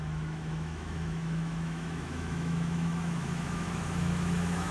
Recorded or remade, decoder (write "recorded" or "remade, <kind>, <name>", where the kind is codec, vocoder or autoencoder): remade, autoencoder, DAC-VAE